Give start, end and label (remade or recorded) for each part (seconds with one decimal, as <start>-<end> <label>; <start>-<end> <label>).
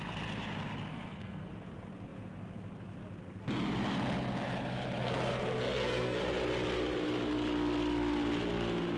0.0-0.9 recorded; 0.9-1.5 remade; 1.5-5.0 recorded; 5.0-6.2 remade; 6.2-9.0 recorded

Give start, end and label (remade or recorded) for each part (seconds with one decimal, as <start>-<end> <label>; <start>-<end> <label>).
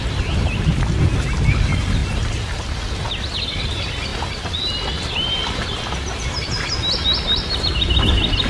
0.0-8.5 recorded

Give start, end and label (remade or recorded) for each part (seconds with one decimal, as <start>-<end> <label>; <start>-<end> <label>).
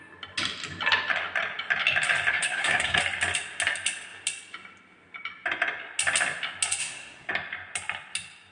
0.0-2.3 recorded; 2.3-3.0 remade; 3.0-6.8 recorded; 6.8-7.3 remade; 7.3-8.5 recorded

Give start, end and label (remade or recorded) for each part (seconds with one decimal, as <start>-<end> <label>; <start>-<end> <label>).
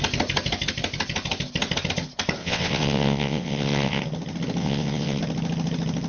0.0-2.4 recorded; 2.4-4.0 remade; 4.0-4.6 recorded; 4.6-5.2 remade; 5.2-6.1 recorded